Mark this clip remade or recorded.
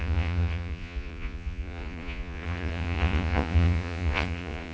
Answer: remade